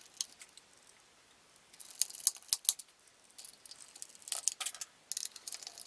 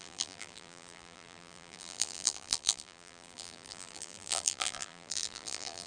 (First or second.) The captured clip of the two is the first